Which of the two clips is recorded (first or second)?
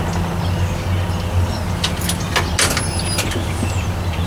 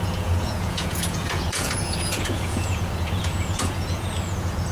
first